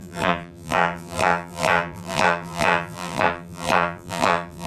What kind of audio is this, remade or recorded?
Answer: remade